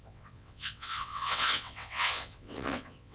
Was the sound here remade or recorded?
remade